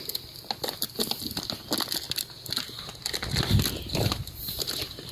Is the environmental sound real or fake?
real